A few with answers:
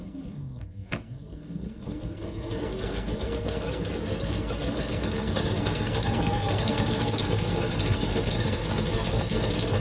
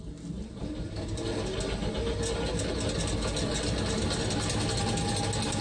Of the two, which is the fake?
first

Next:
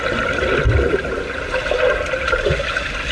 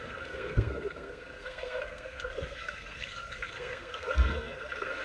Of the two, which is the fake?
second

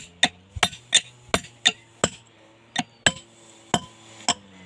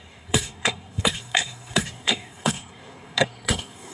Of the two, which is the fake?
second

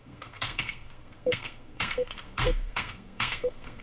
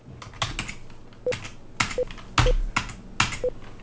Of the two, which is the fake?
first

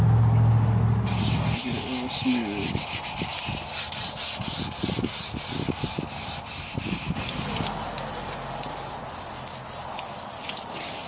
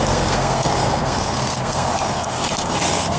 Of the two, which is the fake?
second